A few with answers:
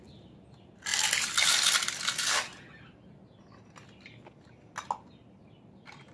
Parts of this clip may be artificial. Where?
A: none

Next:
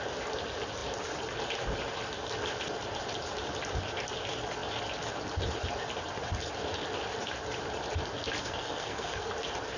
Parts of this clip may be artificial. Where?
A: 8.4-9.3 (codec, SNAC)

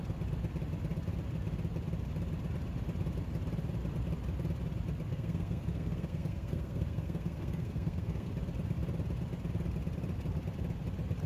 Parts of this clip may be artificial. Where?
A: 5.1-8.3 (codec, SNAC)

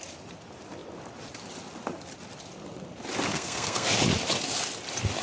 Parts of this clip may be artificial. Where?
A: 3.3-4.0 (codec, SNAC)

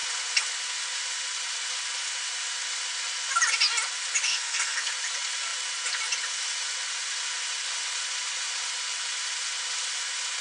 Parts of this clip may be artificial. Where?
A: 4.3-4.9 (codec, SNAC)